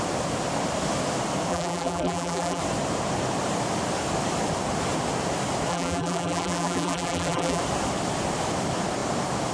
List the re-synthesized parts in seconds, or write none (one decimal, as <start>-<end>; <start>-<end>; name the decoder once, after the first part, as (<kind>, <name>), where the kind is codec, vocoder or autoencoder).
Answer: 1.5-2.6 (vocoder, BigVGAN v2); 5.7-7.6